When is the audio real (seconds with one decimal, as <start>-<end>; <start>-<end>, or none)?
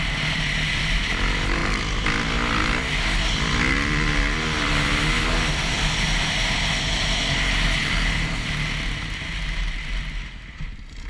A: 0.0-11.1